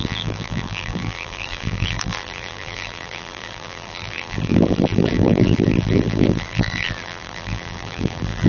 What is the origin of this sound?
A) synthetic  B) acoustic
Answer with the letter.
A